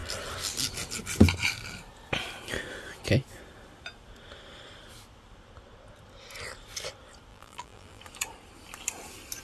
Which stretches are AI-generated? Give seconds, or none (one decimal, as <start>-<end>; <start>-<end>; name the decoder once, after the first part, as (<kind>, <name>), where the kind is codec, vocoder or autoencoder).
7.3-8.0 (vocoder, BigVGAN v2)